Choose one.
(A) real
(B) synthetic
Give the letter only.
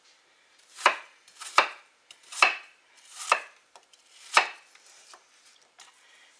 B